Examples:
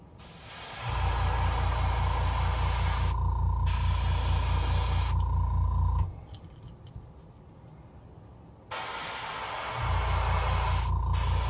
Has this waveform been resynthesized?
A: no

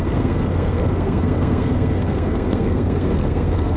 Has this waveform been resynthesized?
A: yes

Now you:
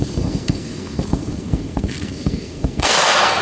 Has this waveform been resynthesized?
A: yes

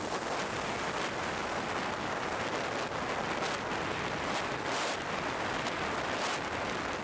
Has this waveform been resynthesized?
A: no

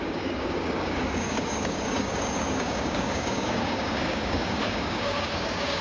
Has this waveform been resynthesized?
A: yes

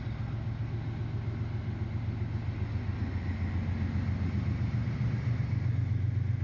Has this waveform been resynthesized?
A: no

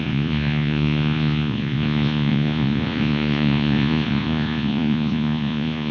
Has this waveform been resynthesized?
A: yes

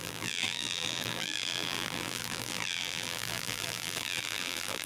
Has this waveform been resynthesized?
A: yes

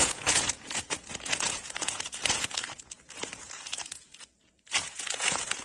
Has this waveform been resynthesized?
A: yes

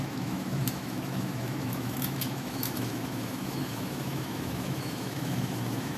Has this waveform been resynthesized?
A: yes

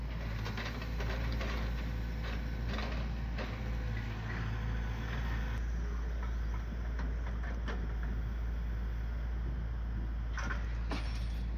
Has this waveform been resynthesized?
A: no